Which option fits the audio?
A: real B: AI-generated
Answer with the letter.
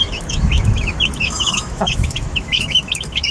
B